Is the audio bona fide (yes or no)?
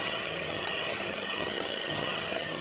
no